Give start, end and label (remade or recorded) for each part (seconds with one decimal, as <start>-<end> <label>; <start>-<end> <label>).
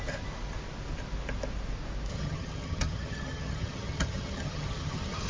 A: 0.0-2.1 recorded; 2.1-5.3 remade